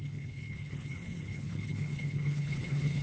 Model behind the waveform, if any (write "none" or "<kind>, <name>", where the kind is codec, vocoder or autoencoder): codec, HILCodec